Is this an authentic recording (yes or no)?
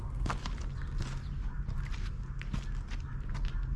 yes